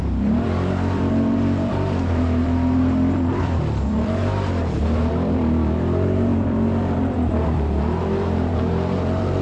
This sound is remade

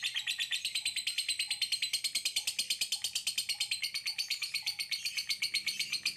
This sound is recorded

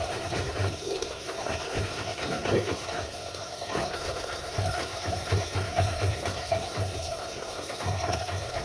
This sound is remade